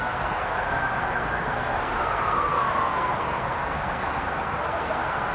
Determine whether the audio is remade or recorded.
remade